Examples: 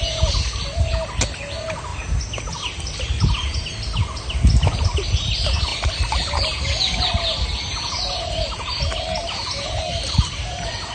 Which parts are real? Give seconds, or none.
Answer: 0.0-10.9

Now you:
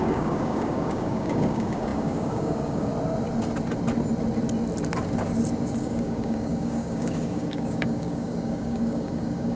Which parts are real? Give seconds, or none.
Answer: 2.9-5.8

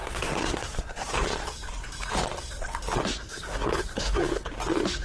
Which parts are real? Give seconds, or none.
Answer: 1.1-3.2; 4.5-5.0

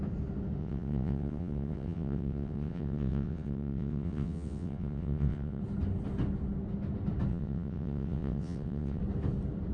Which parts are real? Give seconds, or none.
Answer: 0.0-0.6; 5.6-7.3; 9.0-9.7

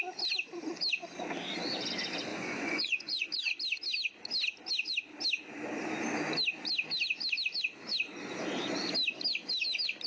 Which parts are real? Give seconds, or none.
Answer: 0.0-2.3; 3.5-10.1